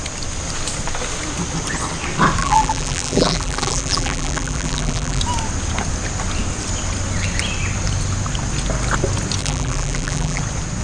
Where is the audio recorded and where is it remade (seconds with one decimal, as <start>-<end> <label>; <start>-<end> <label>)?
0.0-2.4 recorded; 2.4-5.2 remade; 5.2-9.4 recorded; 9.4-10.4 remade; 10.4-10.8 recorded